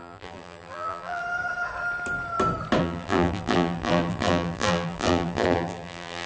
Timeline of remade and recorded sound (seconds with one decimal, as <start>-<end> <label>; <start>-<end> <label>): 0.0-1.2 remade; 1.2-2.8 recorded; 2.8-6.3 remade